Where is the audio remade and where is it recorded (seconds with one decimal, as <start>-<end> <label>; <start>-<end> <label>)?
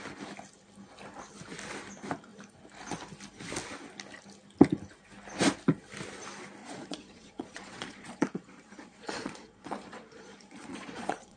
0.0-6.6 recorded; 6.6-11.4 remade